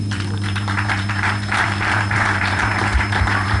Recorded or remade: remade